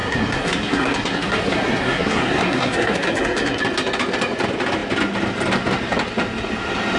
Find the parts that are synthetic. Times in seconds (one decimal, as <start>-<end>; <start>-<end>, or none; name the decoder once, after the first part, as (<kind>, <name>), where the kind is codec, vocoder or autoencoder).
0.0-3.6 (codec, SNAC)